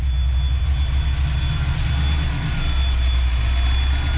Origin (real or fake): real